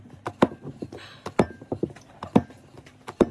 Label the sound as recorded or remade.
recorded